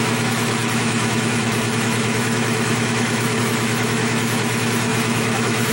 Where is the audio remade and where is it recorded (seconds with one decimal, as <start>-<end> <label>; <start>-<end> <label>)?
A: 0.0-5.7 remade